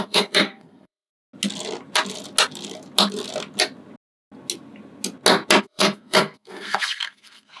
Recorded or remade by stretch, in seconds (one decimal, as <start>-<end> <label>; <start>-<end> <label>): 0.0-1.1 remade; 1.1-5.6 recorded; 5.6-7.6 remade